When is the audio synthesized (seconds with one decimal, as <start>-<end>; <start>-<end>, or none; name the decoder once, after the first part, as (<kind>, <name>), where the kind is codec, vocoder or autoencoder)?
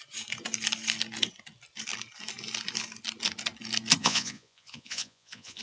4.0-5.6 (vocoder, Vocos)